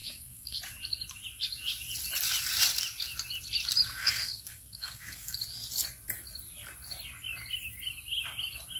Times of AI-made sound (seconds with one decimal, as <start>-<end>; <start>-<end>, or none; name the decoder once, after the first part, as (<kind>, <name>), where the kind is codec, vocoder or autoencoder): 0.0-0.6 (codec, SNAC); 4.0-5.4